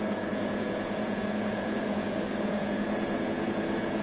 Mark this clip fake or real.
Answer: fake